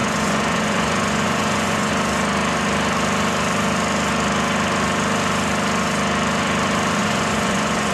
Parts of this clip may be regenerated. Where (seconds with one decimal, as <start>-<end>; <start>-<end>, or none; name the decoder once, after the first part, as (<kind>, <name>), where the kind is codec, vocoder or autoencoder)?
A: 0.0-1.9 (vocoder, Vocos); 7.0-7.9

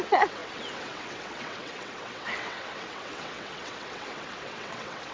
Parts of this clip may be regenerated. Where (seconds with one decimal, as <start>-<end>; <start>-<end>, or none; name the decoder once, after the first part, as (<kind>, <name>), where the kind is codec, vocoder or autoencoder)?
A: 0.0-5.1 (vocoder, WaveNeXt)

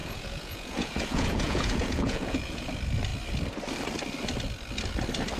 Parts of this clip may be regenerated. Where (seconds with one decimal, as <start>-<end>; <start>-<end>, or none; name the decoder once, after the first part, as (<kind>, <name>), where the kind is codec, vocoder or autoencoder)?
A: 0.0-2.7 (vocoder, Vocos)